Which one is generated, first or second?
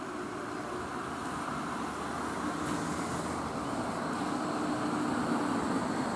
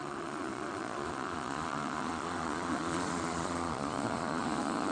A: second